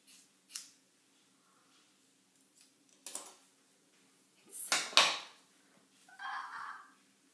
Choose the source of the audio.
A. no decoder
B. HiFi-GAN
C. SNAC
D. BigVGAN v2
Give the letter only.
A